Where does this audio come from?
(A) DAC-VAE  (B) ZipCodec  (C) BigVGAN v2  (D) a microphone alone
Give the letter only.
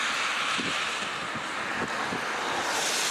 D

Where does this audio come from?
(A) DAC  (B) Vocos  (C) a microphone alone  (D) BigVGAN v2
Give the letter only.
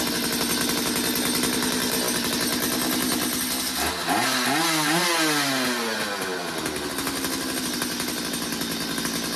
C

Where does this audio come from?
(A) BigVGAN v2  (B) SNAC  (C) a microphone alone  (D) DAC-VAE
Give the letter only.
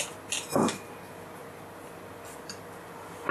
C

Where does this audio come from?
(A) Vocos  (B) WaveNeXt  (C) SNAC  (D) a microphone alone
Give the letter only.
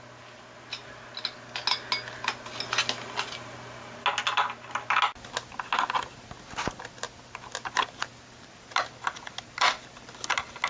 D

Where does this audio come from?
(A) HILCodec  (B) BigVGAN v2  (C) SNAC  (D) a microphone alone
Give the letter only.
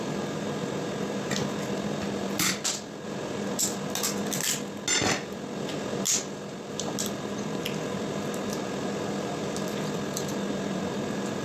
D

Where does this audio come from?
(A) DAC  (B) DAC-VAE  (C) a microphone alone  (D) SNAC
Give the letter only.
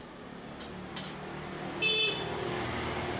C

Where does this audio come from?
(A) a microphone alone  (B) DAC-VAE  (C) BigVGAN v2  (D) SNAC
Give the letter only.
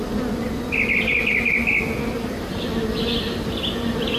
A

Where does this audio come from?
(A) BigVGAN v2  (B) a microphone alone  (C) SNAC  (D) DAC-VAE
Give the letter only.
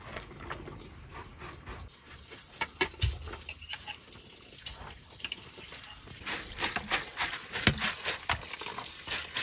B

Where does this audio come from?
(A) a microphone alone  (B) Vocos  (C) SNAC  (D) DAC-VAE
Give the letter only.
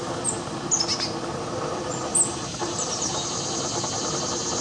A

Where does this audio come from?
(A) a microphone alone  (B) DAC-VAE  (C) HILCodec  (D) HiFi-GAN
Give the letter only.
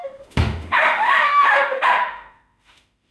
B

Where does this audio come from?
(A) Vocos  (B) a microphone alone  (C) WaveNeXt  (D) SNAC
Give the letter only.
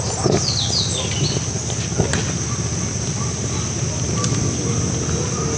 B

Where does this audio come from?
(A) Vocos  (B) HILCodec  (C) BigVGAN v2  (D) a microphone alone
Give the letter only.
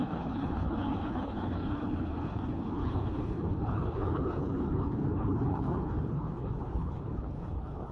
B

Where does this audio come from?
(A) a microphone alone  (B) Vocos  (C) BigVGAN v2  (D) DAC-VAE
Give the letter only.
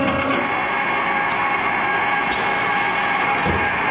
A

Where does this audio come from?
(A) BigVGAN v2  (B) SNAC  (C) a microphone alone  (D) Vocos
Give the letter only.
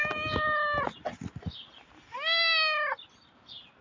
C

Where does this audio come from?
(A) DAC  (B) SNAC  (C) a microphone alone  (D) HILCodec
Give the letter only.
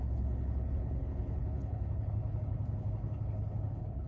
D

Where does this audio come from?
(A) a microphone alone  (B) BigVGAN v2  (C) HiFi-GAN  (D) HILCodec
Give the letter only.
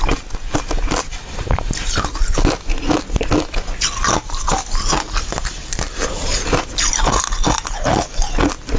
A